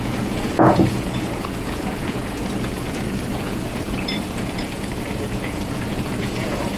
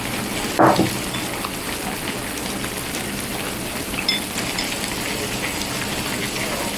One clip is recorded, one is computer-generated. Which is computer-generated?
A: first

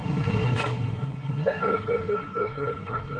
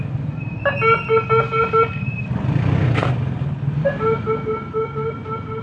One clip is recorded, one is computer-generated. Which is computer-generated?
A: first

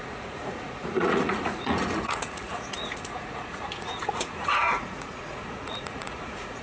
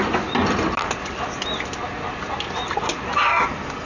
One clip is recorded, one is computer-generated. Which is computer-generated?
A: first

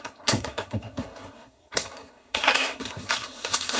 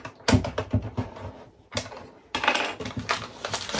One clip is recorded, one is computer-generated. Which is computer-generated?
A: first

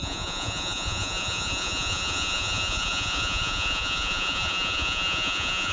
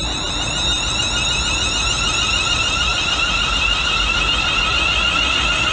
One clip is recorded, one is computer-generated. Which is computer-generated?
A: first